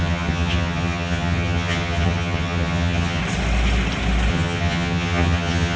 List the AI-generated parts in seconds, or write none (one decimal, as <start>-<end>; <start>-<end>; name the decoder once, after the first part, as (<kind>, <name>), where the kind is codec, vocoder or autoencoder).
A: 0.0-3.2 (vocoder, HiFi-GAN); 4.3-5.8